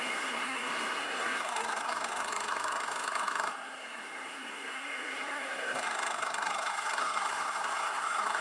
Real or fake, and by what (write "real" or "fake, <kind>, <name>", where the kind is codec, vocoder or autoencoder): fake, codec, SNAC